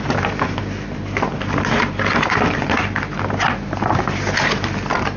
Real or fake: real